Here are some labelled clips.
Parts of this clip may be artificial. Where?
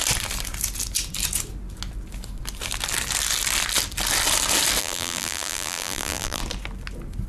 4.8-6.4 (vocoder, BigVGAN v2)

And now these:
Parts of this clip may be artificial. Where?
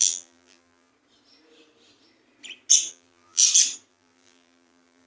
0.0-0.9 (vocoder, BigVGAN v2); 2.9-3.4; 3.9-5.1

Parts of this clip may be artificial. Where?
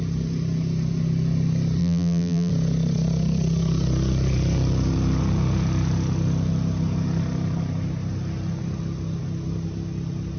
1.8-2.5 (vocoder, BigVGAN v2)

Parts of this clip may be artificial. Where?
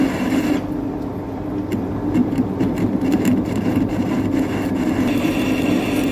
2.2-4.1 (vocoder, BigVGAN v2)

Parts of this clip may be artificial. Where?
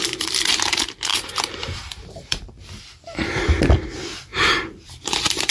1.1-2.8 (vocoder, BigVGAN v2); 4.3-5.5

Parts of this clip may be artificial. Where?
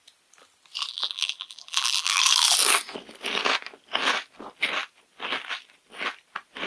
0.9-2.2 (vocoder, BigVGAN v2)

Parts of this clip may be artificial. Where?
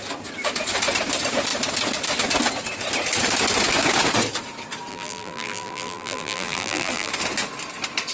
4.9-7.1 (vocoder, BigVGAN v2)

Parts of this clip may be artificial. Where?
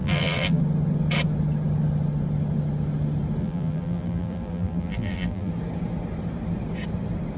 0.0-0.6 (vocoder, BigVGAN v2); 3.4-5.5